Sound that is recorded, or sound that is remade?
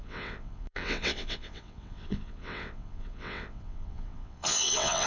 remade